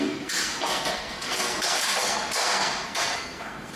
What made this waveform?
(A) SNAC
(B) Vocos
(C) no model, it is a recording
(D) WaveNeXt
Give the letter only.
A